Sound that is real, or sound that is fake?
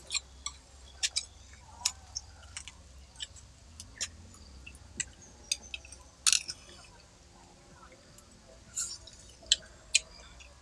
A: real